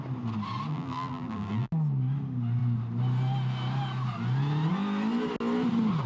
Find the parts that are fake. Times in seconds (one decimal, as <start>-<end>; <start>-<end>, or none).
0.7-1.7